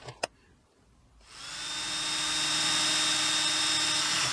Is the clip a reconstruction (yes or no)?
no